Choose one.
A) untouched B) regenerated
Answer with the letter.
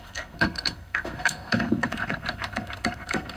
B